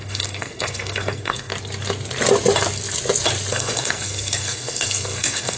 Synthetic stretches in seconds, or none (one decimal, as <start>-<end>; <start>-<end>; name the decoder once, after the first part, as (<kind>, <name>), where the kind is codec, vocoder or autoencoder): 0.0-1.5 (codec, SNAC); 3.5-5.6